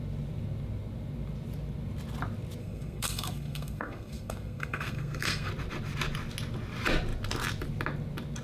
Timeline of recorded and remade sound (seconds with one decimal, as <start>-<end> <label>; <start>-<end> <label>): 0.0-2.6 recorded; 2.6-5.5 remade; 5.5-8.4 recorded